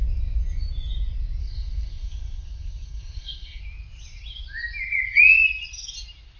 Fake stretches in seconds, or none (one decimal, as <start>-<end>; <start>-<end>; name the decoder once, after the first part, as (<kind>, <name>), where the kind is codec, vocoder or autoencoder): 1.4-3.6 (codec, SNAC)

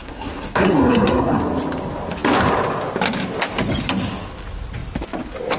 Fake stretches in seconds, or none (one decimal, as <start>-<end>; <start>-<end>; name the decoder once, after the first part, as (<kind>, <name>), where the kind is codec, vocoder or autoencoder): 0.0-1.4 (codec, SNAC)

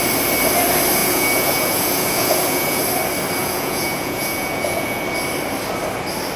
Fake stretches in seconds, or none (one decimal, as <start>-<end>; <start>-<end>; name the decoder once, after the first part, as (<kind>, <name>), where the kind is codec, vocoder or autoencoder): 1.0-2.8 (vocoder, Vocos); 3.4-5.0